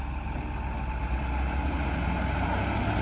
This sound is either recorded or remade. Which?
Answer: recorded